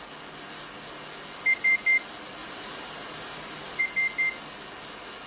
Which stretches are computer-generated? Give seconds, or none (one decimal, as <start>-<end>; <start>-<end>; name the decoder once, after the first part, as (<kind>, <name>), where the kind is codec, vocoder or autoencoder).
2.4-3.8 (vocoder, BigVGAN v2)